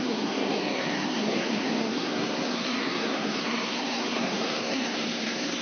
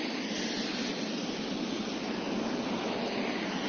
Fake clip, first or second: first